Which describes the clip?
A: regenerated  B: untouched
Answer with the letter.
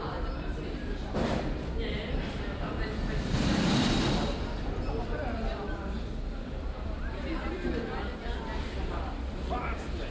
A